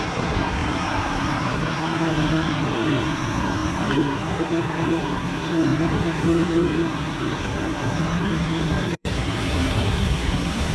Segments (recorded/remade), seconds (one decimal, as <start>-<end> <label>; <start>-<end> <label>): 0.0-10.7 remade